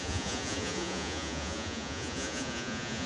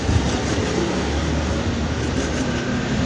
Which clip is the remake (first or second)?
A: first